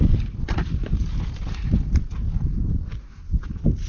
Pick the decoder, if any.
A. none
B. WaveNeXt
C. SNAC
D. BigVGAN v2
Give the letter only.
A